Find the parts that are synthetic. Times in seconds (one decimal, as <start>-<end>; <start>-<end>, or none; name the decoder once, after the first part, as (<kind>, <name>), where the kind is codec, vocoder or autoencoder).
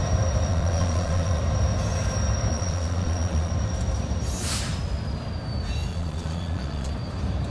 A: 0.5-1.4 (vocoder, Vocos); 2.5-3.5; 5.9-6.9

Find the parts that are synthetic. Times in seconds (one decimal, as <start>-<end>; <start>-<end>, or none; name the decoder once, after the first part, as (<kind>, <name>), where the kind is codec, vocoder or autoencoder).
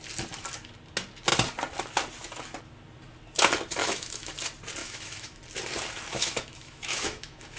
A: 3.8-4.3 (autoencoder, DAC-VAE); 4.8-5.4; 6.1-7.6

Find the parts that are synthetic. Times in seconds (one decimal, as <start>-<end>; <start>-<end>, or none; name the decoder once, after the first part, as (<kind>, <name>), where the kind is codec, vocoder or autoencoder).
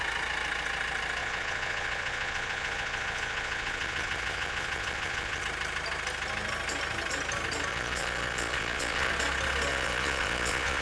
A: 1.2-5.4 (vocoder, Vocos); 7.7-9.1; 9.7-10.8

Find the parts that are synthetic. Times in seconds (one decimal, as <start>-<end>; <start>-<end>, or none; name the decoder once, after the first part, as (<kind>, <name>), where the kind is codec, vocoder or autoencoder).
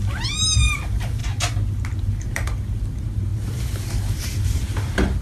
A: 0.0-1.2 (vocoder, BigVGAN v2); 2.0-3.3; 3.9-5.2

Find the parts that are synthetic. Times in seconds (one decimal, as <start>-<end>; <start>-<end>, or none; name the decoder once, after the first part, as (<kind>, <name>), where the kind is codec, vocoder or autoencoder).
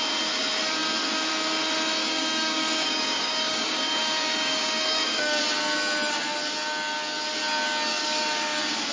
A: 2.0-5.4 (codec, DAC); 7.9-8.9